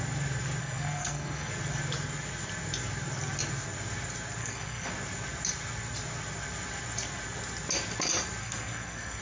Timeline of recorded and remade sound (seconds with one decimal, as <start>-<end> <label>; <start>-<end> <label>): 0.0-0.6 recorded; 0.6-1.5 remade; 1.5-4.4 recorded; 4.4-4.9 remade; 4.9-8.4 recorded; 8.4-9.2 remade